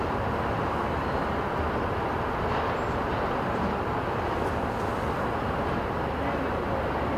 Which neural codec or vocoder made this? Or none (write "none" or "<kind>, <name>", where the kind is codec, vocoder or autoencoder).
none